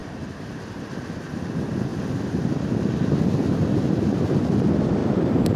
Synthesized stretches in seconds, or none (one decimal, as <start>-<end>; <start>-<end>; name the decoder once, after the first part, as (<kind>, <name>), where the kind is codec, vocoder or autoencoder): 0.0-0.8 (vocoder, BigVGAN v2); 5.0-5.6